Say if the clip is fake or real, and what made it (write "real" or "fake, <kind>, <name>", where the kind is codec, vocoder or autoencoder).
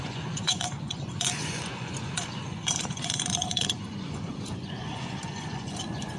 fake, vocoder, Vocos